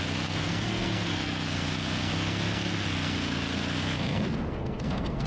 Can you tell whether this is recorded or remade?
remade